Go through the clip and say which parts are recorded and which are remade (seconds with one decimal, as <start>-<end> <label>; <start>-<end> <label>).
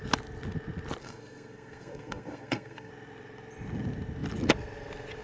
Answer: 0.0-1.0 recorded; 1.0-2.9 remade; 2.9-5.2 recorded